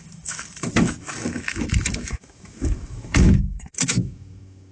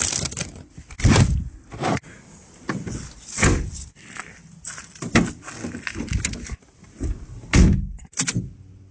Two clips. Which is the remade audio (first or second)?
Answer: first